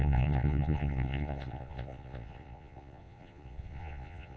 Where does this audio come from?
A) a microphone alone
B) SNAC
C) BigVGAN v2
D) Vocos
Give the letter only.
D